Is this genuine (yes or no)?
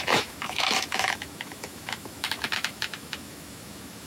no